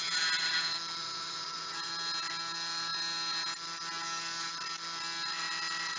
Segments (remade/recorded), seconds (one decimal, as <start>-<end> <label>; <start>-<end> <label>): 0.0-1.0 recorded; 1.0-1.9 remade; 1.9-6.0 recorded